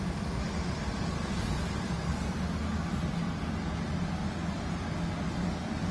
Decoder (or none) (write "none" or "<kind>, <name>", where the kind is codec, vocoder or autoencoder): none